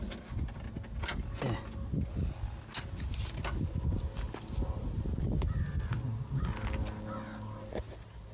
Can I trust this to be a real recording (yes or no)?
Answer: yes